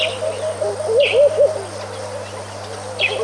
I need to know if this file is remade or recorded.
recorded